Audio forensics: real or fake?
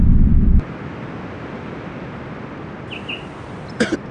real